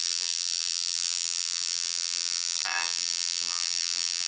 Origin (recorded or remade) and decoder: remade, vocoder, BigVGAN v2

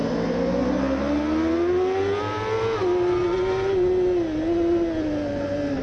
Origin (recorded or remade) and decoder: recorded